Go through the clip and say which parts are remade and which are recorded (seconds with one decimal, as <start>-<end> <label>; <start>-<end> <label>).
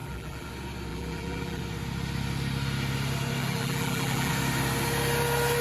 0.0-0.5 remade; 0.5-0.9 recorded; 0.9-1.6 remade; 1.6-3.4 recorded; 3.4-4.3 remade; 4.3-5.6 recorded